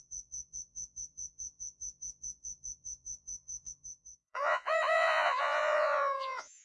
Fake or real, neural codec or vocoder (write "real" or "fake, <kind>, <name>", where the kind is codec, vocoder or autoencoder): fake, vocoder, Vocos